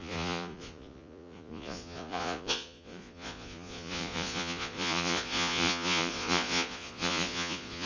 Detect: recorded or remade remade